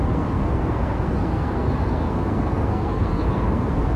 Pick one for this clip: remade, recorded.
remade